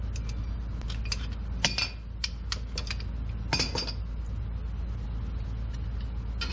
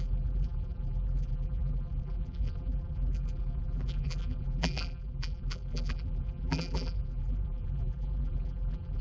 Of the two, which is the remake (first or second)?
second